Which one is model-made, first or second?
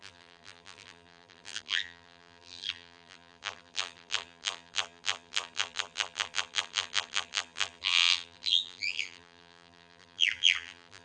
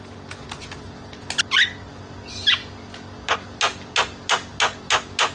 first